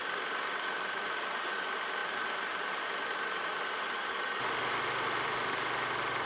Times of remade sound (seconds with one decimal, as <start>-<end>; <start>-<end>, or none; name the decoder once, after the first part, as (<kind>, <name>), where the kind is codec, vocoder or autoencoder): none